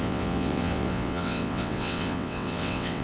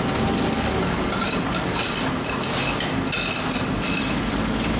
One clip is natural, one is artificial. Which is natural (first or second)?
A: second